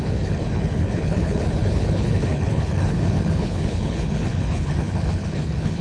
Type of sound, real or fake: fake